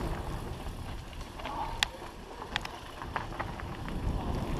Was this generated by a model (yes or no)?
no